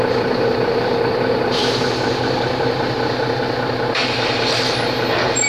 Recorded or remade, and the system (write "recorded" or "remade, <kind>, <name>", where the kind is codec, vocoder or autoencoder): recorded